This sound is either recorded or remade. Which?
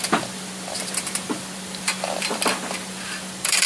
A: remade